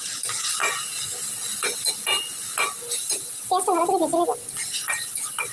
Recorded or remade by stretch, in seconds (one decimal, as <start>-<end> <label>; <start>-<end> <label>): 0.0-5.5 recorded